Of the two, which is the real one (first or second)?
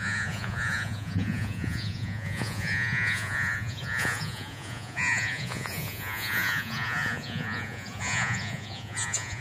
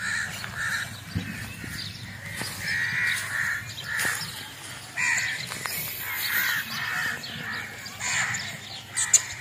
second